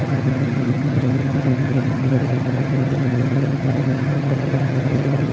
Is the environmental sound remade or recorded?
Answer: remade